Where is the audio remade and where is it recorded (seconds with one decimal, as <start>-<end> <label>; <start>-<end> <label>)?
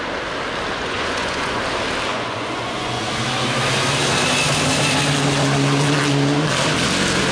0.0-0.8 recorded; 0.8-1.6 remade; 1.6-2.1 recorded; 2.1-3.1 remade; 3.1-7.3 recorded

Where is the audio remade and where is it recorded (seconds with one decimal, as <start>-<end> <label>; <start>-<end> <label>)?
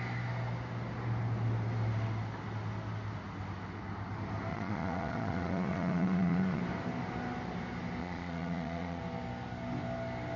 0.0-4.5 recorded; 4.5-6.6 remade; 6.6-8.0 recorded; 8.0-9.0 remade; 9.0-10.4 recorded